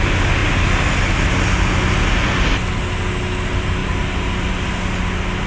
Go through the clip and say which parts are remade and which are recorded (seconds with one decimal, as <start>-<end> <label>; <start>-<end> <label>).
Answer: 0.0-5.5 recorded